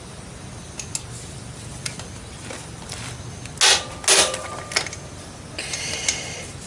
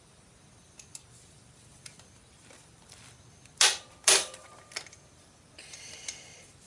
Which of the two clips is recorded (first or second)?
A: first